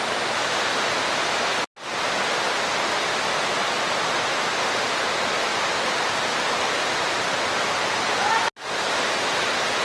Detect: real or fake real